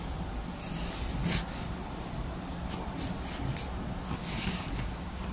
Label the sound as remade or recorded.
recorded